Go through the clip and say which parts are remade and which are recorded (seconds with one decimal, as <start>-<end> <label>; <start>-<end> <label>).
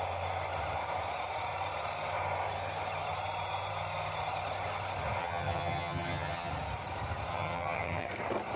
0.0-5.2 recorded; 5.2-6.5 remade; 6.5-7.3 recorded; 7.3-8.1 remade; 8.1-8.6 recorded